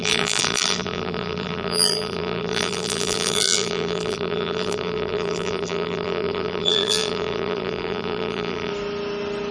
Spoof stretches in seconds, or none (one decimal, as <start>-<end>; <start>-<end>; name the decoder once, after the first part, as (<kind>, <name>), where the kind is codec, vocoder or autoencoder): 0.0-8.7 (vocoder, BigVGAN v2)